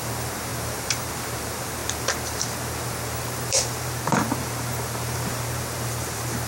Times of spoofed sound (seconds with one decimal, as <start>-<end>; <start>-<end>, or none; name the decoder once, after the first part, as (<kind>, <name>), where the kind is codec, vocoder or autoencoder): 0.0-6.5 (vocoder, BigVGAN v2)